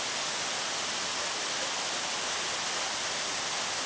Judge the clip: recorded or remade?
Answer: recorded